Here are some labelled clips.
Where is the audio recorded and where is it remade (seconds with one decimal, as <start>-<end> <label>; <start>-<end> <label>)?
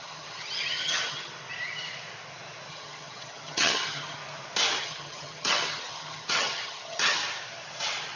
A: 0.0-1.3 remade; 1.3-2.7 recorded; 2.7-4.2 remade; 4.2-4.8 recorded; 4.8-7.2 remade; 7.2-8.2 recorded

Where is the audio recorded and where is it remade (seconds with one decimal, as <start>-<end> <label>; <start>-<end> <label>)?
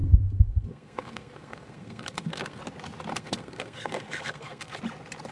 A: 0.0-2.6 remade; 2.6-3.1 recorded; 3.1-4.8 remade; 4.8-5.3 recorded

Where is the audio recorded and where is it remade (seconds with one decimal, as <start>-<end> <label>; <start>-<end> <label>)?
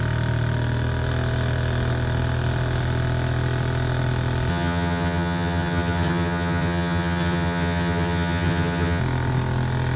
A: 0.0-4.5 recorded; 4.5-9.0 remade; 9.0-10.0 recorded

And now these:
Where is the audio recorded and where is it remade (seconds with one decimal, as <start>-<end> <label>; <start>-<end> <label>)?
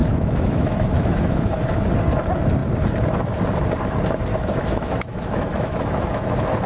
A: 0.0-1.8 remade; 1.8-4.3 recorded; 4.3-6.7 remade